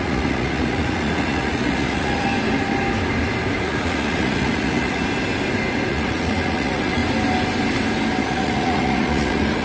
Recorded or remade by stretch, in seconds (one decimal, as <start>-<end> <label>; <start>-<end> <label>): 0.0-2.3 remade; 2.3-3.6 recorded; 3.6-5.0 remade; 5.0-5.9 recorded; 5.9-7.0 remade; 7.0-8.2 recorded; 8.2-9.6 remade